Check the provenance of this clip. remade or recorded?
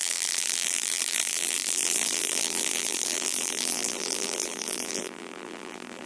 remade